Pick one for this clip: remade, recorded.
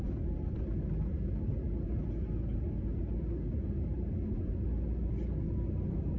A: recorded